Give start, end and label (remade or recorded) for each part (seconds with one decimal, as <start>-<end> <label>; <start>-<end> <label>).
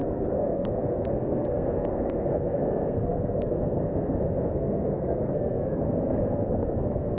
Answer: 0.0-7.2 remade